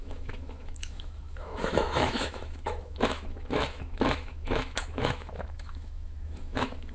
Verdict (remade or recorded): remade